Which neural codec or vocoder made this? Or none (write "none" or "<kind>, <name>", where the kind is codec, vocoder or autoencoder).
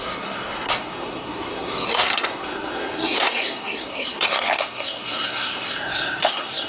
codec, SNAC